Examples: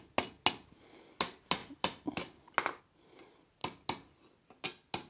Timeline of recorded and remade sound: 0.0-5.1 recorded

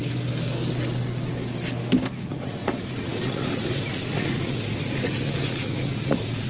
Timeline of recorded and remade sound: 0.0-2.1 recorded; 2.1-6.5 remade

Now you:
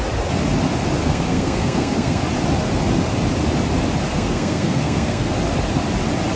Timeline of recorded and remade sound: 0.0-1.0 recorded; 1.0-2.2 remade; 2.2-4.1 recorded; 4.1-5.3 remade; 5.3-6.4 recorded

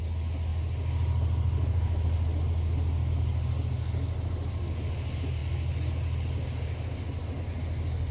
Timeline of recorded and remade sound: 0.0-8.1 recorded